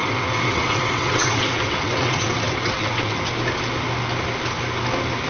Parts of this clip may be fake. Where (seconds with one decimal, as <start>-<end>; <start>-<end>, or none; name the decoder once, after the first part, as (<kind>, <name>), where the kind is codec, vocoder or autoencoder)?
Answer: 0.0-3.2 (vocoder, WaveNeXt)